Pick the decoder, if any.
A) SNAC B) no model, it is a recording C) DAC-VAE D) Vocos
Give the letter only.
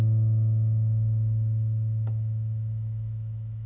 C